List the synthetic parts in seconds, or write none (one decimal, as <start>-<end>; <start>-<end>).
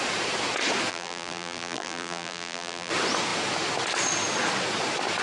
0.9-2.9